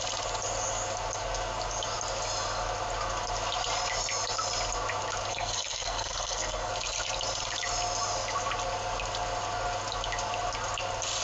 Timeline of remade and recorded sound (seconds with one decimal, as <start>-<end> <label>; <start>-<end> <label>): 0.0-5.3 recorded; 5.3-6.7 remade; 6.7-11.2 recorded